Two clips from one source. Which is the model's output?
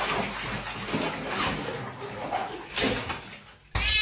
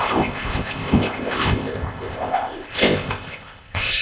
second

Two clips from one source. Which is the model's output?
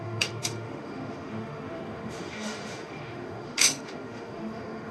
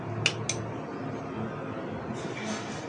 first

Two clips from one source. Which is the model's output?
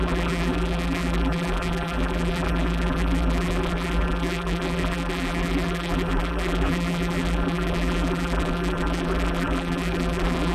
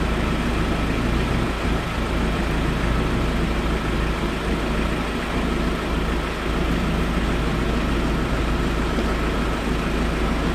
first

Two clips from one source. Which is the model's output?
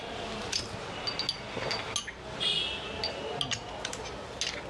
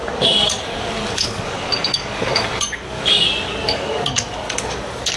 second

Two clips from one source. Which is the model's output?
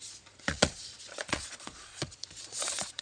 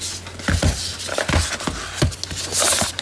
first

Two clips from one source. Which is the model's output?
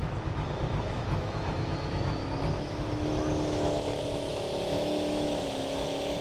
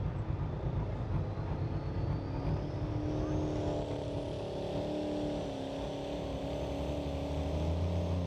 first